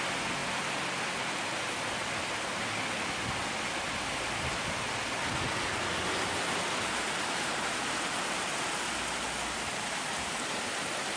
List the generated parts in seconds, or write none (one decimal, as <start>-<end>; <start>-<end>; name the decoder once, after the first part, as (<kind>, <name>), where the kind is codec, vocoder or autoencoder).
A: none